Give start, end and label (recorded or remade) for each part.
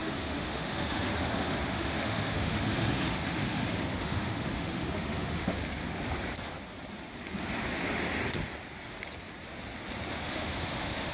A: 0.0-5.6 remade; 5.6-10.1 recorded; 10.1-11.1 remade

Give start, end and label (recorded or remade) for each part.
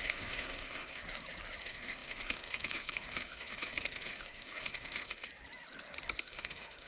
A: 0.0-1.0 remade; 1.0-1.6 recorded; 1.6-5.3 remade; 5.3-6.2 recorded; 6.2-6.9 remade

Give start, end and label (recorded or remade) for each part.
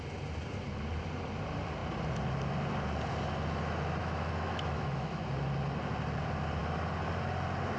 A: 0.0-4.0 recorded; 4.0-5.2 remade; 5.2-7.8 recorded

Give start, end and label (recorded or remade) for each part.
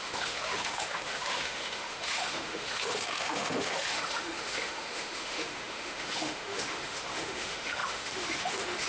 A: 0.0-8.9 remade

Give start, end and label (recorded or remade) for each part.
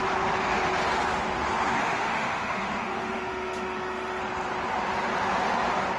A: 0.0-1.8 recorded; 1.8-4.2 remade; 4.2-6.0 recorded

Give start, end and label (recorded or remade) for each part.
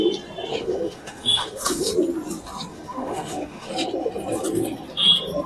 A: 0.0-0.5 recorded; 0.5-1.9 remade; 1.9-2.7 recorded; 2.7-3.7 remade; 3.7-5.5 recorded